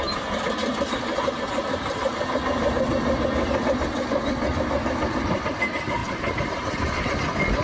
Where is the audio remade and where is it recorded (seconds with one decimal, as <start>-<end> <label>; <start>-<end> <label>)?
0.0-6.0 recorded; 6.0-7.0 remade; 7.0-7.6 recorded